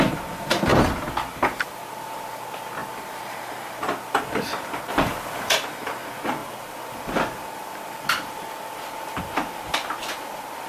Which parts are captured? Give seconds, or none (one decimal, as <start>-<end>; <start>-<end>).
0.0-6.4; 9.2-10.7